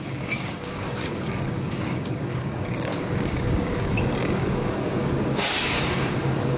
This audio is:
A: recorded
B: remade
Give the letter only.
B